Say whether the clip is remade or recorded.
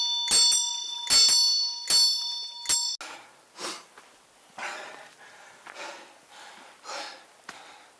recorded